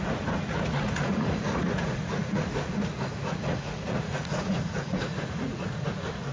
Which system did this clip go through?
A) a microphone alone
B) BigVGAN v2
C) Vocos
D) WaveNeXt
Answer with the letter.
C